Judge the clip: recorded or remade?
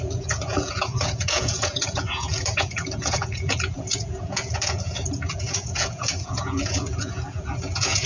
remade